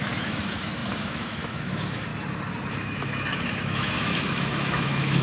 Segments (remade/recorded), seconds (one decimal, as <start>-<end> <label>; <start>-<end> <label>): 0.0-2.1 remade; 2.1-2.7 recorded; 2.7-5.2 remade